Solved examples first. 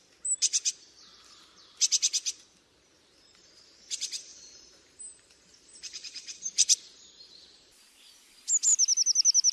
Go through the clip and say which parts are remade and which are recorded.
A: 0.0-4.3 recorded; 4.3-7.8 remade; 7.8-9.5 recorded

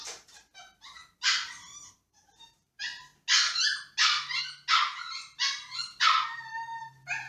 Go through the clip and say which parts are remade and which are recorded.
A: 0.0-1.0 remade; 1.0-1.6 recorded; 1.6-3.1 remade; 3.1-6.8 recorded; 6.8-7.3 remade

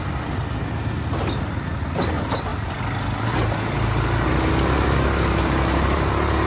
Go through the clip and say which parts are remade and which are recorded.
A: 0.0-6.5 recorded

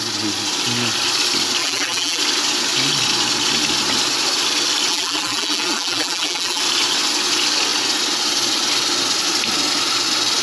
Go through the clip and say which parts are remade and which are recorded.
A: 0.0-1.6 recorded; 1.6-2.2 remade; 2.2-4.9 recorded; 4.9-6.6 remade; 6.6-10.4 recorded

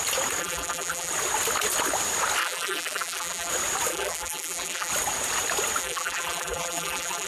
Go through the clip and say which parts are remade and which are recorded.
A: 0.0-0.4 recorded; 0.4-1.1 remade; 1.1-2.4 recorded; 2.4-3.5 remade; 3.5-3.9 recorded; 3.9-4.9 remade; 4.9-5.8 recorded; 5.8-7.3 remade

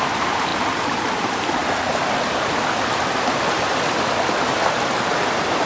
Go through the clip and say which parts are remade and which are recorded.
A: 0.0-0.5 remade; 0.5-1.2 recorded; 1.2-1.6 remade; 1.6-4.5 recorded; 4.5-5.7 remade

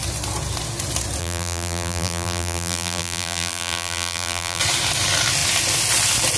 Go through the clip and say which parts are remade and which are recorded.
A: 0.0-1.2 recorded; 1.2-4.6 remade; 4.6-6.4 recorded

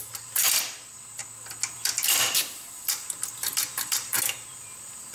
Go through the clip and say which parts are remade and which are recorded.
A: 0.0-1.2 remade; 1.2-1.7 recorded; 1.7-5.1 remade